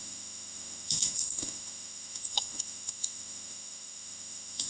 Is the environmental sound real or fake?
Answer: fake